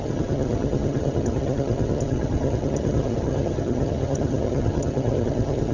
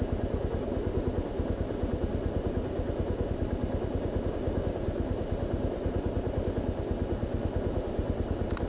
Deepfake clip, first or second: first